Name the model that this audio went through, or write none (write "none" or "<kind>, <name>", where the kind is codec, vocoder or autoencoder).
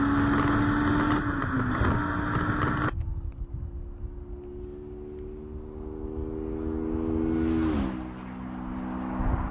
none